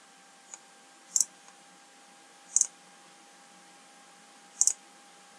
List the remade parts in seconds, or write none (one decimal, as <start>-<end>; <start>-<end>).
none